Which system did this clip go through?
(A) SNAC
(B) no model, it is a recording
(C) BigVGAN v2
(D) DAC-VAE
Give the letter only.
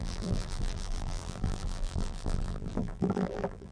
C